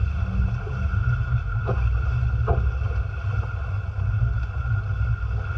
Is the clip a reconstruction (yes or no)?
no